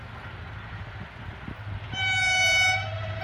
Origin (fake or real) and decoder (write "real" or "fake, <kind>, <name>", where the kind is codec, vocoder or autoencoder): real